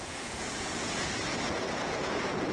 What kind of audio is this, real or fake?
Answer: fake